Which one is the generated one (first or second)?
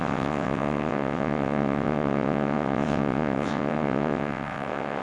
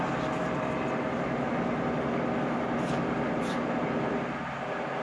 first